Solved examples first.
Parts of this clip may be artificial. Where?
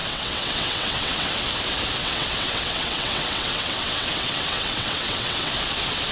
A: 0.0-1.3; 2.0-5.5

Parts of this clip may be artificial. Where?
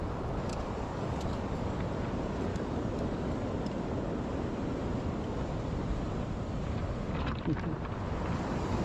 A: 0.5-1.9; 2.5-3.5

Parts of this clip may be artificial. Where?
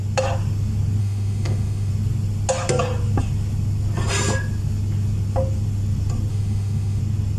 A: 1.0-1.9; 6.3-7.0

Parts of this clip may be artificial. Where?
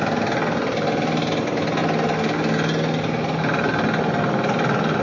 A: none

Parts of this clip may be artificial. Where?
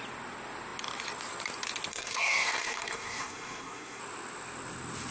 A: 1.9-4.0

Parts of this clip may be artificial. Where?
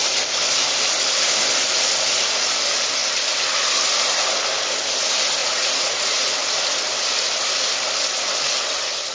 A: 5.4-6.3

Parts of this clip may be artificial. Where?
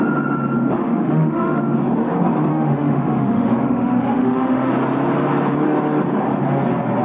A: 0.8-1.6; 2.5-4.7